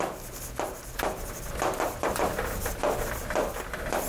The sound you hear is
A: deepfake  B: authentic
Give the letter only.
B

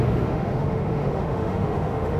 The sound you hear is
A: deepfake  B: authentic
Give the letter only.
A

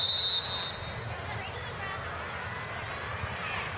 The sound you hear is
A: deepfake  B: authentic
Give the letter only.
B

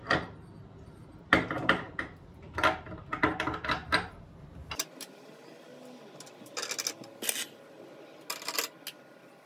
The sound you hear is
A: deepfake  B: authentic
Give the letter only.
B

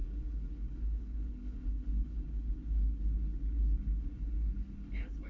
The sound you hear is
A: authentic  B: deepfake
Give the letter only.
B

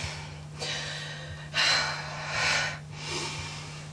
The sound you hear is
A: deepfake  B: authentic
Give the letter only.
B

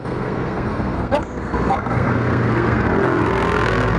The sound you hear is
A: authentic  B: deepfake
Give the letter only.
B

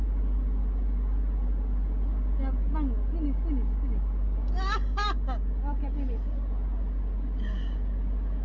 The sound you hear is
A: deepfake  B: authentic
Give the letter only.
B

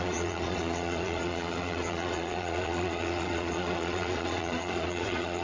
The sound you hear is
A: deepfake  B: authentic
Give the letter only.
A